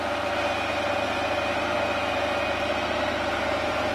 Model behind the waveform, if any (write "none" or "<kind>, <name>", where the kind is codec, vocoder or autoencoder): none